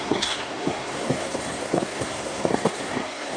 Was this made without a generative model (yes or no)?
no